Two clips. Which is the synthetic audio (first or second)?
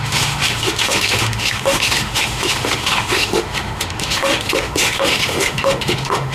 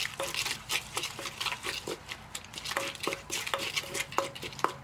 first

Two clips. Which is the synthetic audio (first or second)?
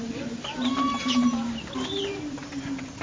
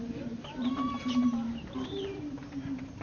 second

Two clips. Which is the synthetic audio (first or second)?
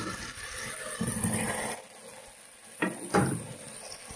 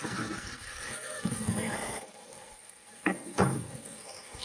second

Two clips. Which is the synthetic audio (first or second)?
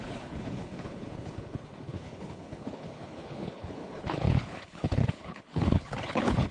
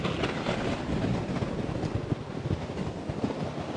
first